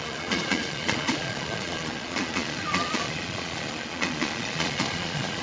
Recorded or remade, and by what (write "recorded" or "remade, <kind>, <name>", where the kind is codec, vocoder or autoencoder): remade, vocoder, Vocos